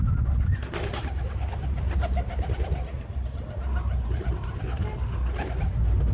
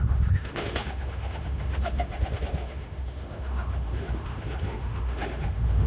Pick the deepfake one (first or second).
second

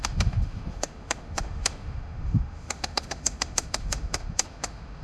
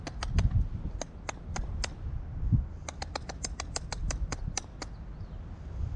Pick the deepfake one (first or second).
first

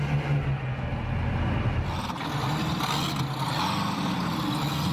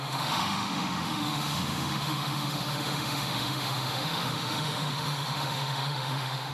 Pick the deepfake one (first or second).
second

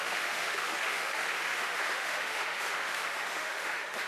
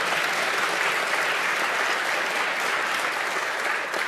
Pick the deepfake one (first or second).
first